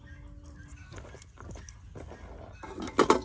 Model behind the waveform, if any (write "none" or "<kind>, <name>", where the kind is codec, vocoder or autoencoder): none